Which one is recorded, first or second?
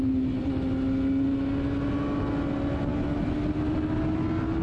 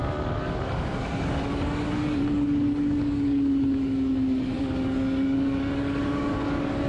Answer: first